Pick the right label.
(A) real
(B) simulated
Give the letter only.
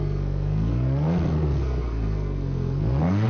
B